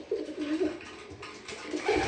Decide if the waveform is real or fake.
real